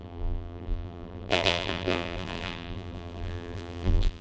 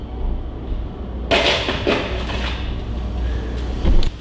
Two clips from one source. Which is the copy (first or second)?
first